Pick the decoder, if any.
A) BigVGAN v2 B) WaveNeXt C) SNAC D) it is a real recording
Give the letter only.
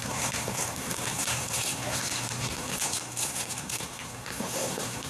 C